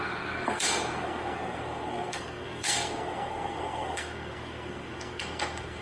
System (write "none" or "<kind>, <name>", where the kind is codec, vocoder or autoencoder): codec, SNAC